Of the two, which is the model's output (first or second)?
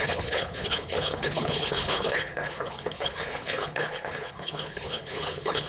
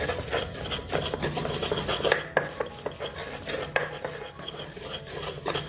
first